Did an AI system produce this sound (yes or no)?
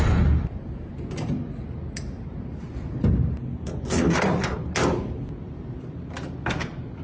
no